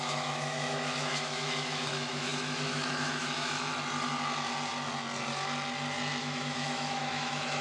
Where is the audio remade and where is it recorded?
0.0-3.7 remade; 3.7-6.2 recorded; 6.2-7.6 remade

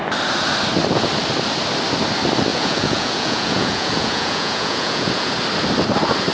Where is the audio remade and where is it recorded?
0.0-2.5 recorded; 2.5-5.3 remade; 5.3-6.3 recorded

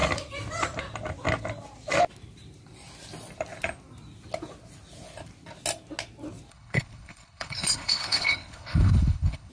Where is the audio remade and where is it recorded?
0.0-6.5 recorded; 6.5-9.5 remade

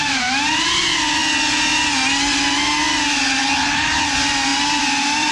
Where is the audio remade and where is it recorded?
0.0-4.5 recorded; 4.5-5.3 remade

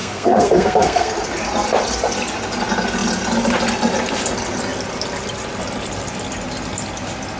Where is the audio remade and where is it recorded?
0.0-1.1 remade; 1.1-7.4 recorded

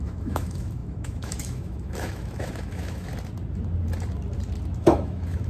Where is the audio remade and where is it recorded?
0.0-3.1 remade; 3.1-4.8 recorded; 4.8-5.5 remade

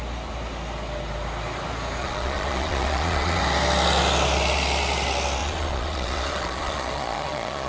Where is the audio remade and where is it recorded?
0.0-2.0 recorded; 2.0-3.4 remade; 3.4-5.4 recorded; 5.4-7.7 remade

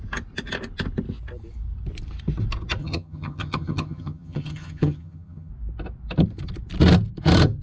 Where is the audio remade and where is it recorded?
0.0-2.8 recorded; 2.8-5.5 remade; 5.5-7.6 recorded